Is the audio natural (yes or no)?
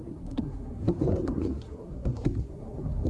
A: no